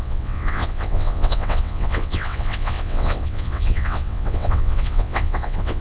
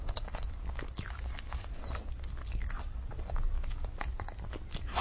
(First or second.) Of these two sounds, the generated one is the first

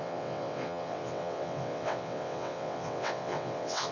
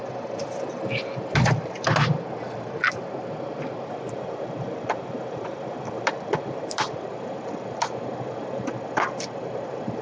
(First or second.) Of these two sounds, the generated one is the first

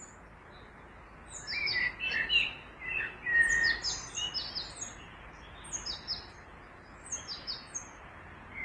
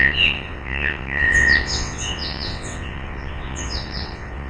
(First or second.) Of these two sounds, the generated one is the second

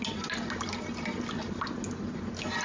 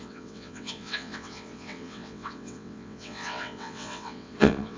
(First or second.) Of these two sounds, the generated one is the second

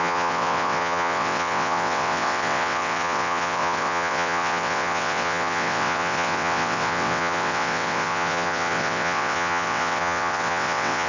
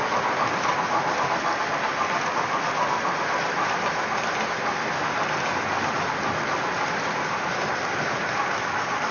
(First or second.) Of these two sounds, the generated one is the first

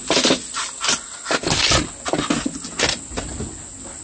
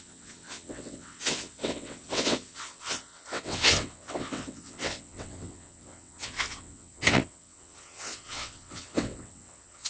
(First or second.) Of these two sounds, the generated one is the second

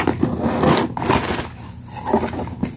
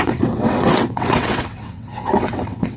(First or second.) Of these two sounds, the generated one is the second